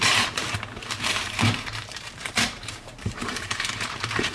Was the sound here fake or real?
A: fake